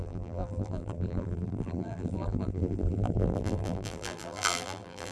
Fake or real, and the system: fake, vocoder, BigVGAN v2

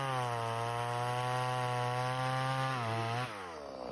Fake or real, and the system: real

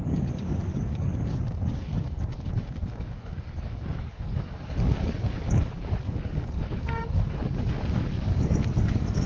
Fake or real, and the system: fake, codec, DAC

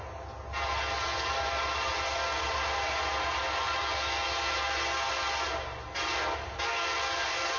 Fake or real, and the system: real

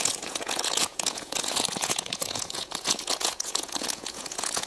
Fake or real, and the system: fake, vocoder, Vocos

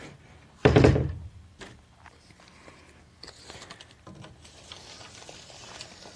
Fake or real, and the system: real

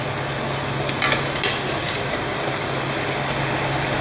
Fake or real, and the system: real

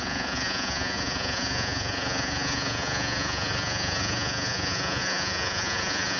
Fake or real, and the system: fake, vocoder, Vocos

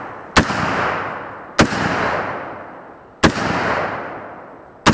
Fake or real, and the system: real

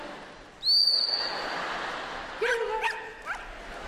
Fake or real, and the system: real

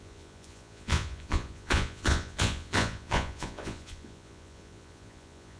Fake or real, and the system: fake, vocoder, Vocos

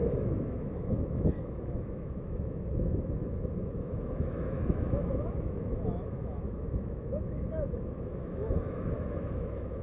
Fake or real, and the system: fake, autoencoder, DAC-VAE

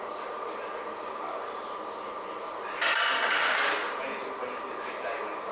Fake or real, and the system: real